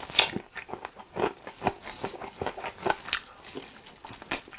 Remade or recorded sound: recorded